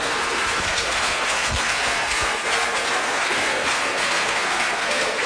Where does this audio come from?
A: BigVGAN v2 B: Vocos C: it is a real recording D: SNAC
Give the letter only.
D